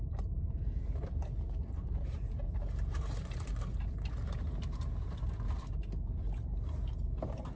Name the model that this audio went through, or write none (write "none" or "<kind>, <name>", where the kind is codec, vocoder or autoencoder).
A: vocoder, BigVGAN v2